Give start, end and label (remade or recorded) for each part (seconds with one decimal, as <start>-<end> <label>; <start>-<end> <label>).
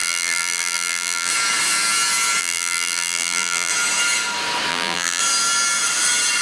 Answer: 0.0-1.3 remade; 1.3-2.4 recorded; 2.4-3.7 remade; 3.7-4.7 recorded; 4.7-5.2 remade; 5.2-6.4 recorded